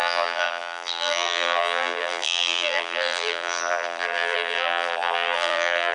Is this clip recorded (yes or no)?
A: no